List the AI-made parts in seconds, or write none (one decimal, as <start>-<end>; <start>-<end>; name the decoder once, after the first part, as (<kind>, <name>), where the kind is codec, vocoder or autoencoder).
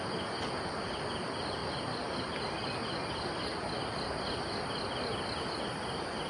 none